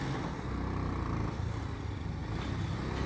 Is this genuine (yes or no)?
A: yes